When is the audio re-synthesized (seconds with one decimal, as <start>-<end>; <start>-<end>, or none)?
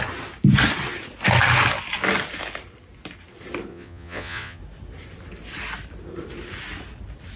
3.7-4.6